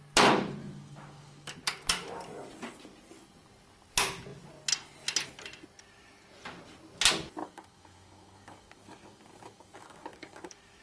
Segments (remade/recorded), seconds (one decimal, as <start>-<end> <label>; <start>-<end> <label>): 0.0-0.6 recorded; 0.6-1.5 remade; 1.5-7.4 recorded; 7.4-10.8 remade